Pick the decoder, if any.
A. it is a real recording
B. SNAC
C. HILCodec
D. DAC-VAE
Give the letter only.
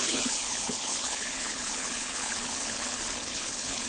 C